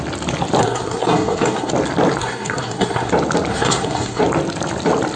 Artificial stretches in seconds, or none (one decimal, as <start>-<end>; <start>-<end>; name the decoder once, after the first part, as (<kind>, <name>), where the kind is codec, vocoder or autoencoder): 0.6-1.7 (codec, SNAC); 2.2-3.1; 3.5-4.2

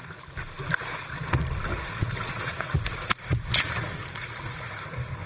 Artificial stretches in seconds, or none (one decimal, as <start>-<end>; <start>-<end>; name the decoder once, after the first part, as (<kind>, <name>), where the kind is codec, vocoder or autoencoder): 1.7-4.8 (vocoder, Vocos)

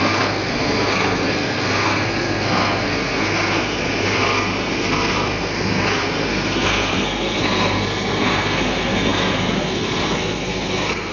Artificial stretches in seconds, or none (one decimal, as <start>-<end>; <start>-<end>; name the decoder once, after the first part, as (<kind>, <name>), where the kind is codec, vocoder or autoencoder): 0.0-11.1 (codec, SNAC)

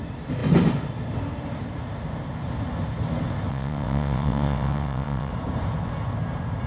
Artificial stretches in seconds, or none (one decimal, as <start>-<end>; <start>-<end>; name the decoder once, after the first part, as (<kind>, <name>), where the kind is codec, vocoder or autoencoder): 3.5-5.3 (vocoder, WaveNeXt)

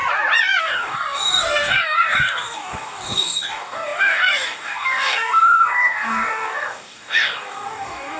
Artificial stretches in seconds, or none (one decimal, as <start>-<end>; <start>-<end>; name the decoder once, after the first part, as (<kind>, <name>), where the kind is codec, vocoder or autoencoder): 0.6-8.2 (codec, DAC)

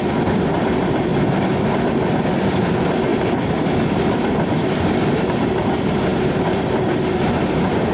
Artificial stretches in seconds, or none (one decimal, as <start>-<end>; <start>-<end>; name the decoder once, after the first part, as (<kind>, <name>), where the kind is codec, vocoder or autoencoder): 1.1-2.6 (vocoder, BigVGAN v2); 3.1-5.6